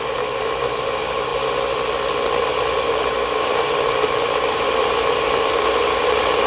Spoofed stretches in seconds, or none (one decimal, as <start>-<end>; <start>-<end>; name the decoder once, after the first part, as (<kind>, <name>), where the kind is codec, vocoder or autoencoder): 0.0-1.3 (vocoder, BigVGAN v2); 2.4-6.5